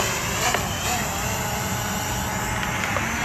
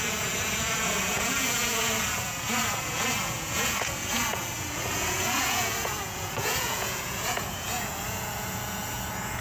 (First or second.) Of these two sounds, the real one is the first